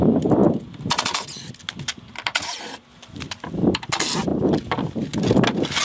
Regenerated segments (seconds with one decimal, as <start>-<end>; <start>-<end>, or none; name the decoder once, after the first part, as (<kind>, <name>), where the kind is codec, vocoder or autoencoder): none

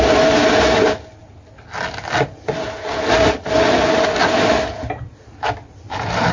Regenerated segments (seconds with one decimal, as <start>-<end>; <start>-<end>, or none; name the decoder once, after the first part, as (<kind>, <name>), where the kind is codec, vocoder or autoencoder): none